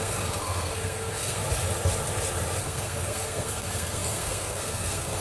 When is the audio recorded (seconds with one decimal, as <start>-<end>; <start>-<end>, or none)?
1.4-2.6